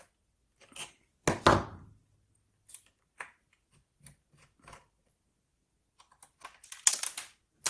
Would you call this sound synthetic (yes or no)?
no